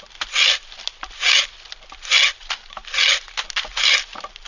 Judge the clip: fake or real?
real